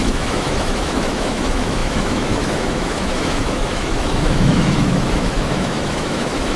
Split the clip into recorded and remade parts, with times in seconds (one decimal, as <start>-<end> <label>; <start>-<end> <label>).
0.0-6.6 remade